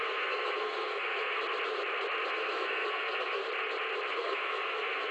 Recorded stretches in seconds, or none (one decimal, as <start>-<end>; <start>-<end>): 1.4-2.3; 3.4-4.1